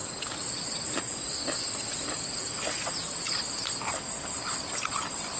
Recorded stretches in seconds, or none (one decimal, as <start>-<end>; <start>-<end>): 0.0-5.4